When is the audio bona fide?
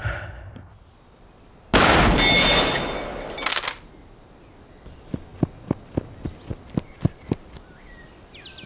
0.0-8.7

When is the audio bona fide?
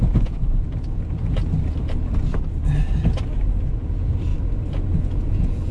1.4-3.6; 4.3-5.0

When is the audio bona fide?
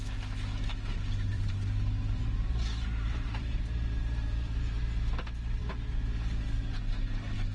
0.0-1.3; 4.8-7.5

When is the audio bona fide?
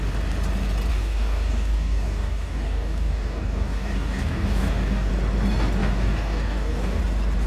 0.0-0.9; 5.1-5.8; 7.0-7.5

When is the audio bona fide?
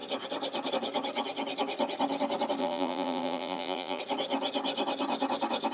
0.0-2.6; 4.0-5.7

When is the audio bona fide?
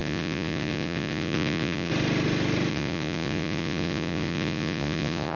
1.9-2.7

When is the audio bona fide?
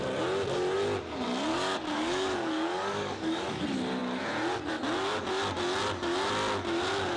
0.0-1.5; 3.6-7.2